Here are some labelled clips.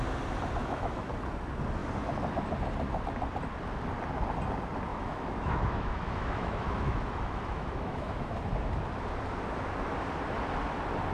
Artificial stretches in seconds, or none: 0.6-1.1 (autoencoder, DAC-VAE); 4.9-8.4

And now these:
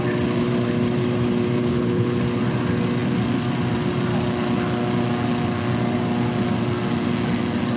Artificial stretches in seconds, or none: 1.7-2.2 (codec, HILCodec)

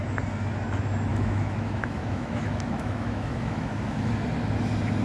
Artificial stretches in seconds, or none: 1.1-4.1 (autoencoder, DAC-VAE)

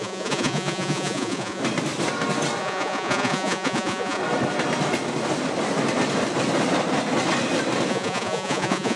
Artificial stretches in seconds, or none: 0.0-1.6 (vocoder, Vocos); 2.6-4.2; 7.9-9.0

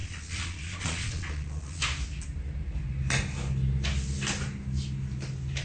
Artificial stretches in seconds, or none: 0.0-1.8 (vocoder, Vocos)

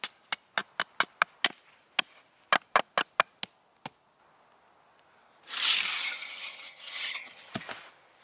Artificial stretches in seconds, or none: 6.0-7.5 (vocoder, HiFi-GAN)